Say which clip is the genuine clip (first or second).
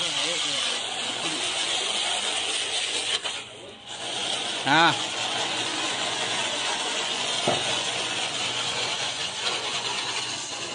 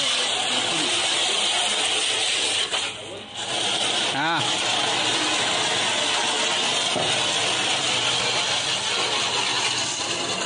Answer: second